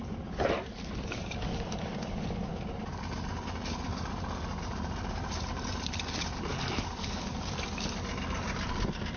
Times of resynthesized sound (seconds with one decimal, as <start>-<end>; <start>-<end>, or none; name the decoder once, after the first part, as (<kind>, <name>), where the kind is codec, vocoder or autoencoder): 6.5-7.3 (codec, DAC)